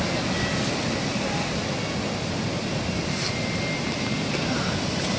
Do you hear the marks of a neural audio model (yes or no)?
no